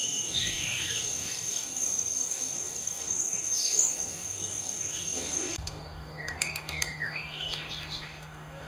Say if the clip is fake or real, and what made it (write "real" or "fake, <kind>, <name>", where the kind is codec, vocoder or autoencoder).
fake, codec, DAC